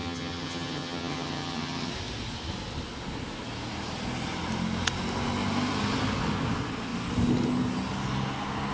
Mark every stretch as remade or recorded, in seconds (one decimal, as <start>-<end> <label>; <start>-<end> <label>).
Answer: 0.0-1.9 remade; 1.9-8.7 recorded